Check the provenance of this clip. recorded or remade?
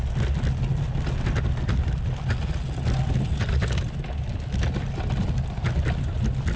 recorded